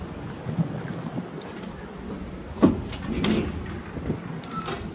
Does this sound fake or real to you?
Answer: real